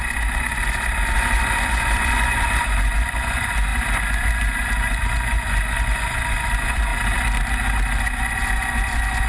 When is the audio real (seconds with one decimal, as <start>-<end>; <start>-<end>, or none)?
6.9-8.0

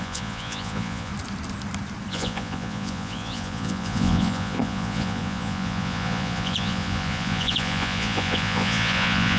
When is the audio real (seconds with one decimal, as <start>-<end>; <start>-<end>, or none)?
1.1-2.1

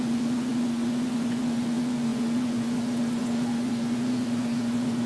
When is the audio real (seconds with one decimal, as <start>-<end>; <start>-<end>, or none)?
none

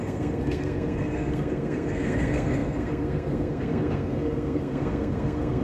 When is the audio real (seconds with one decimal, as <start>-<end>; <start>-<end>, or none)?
none

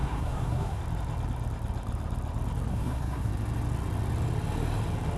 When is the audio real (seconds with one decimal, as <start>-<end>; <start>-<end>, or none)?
0.8-2.7; 3.3-5.2

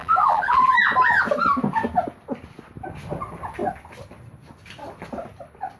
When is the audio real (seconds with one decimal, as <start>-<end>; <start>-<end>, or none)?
0.7-5.8